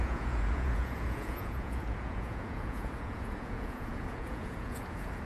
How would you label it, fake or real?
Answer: fake